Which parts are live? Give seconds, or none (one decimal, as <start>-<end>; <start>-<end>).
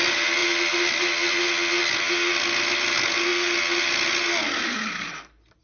0.0-5.6